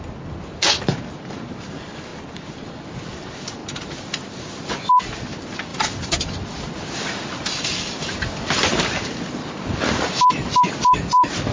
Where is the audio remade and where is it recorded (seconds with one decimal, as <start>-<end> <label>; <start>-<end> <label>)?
0.0-11.5 remade